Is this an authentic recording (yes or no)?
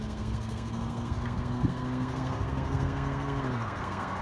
no